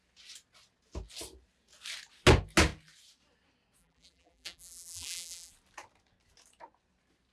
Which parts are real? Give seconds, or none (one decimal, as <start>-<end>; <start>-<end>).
0.0-3.8; 5.5-7.3